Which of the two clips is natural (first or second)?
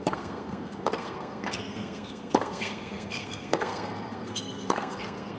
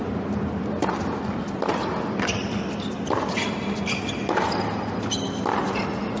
second